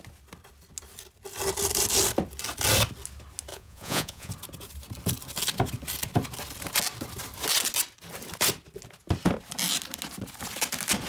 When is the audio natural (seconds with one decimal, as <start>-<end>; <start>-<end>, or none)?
0.0-3.5; 4.3-11.1